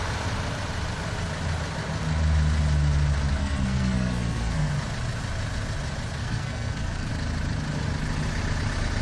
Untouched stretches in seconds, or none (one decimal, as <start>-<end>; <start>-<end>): 0.0-3.4; 4.7-6.2; 7.1-9.0